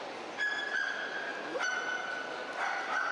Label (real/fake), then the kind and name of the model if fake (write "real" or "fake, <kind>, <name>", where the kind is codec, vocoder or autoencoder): real